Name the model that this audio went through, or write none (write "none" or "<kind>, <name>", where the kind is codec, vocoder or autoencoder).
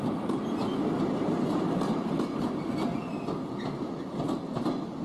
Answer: none